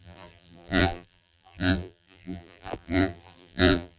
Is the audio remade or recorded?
remade